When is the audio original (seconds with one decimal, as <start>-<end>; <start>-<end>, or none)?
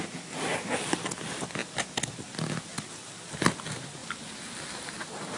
0.0-2.7; 3.2-5.4